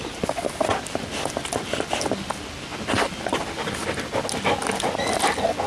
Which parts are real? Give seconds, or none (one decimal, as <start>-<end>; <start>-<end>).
0.0-5.7